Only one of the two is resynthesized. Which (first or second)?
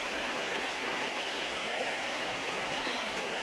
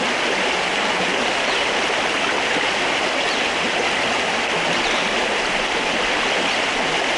first